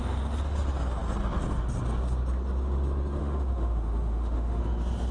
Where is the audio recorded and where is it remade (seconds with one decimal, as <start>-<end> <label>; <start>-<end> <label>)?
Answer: 0.0-3.2 recorded; 3.2-4.6 remade; 4.6-5.1 recorded